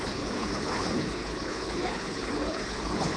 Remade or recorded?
remade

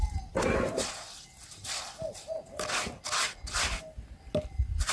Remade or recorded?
recorded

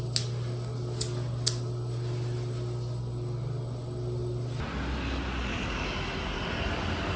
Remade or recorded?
recorded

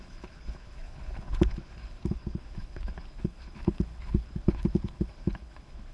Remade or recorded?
remade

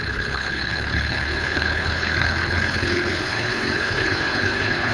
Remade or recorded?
remade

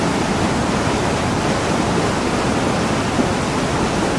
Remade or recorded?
recorded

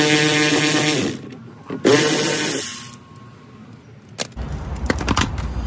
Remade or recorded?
recorded